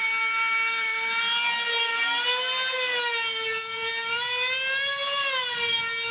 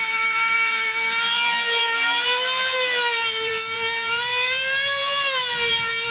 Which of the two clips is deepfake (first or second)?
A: second